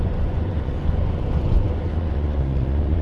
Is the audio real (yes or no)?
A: no